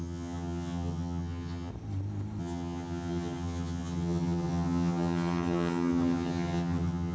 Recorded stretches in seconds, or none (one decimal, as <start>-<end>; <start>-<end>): 1.7-2.4